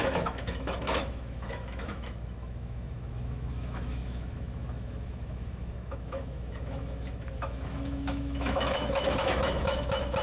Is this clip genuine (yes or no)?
no